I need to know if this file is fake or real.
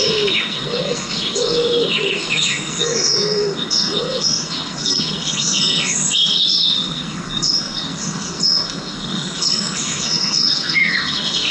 fake